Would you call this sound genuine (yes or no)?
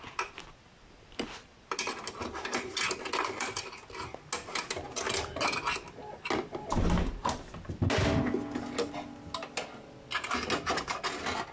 yes